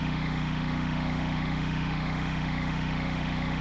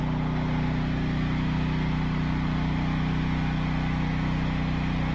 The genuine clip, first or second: second